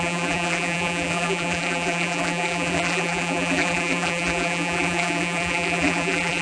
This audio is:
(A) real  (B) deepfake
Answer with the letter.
B